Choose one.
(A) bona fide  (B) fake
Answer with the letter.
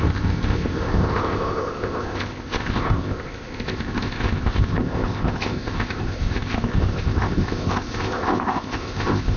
B